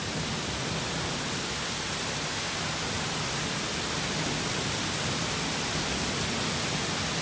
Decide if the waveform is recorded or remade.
recorded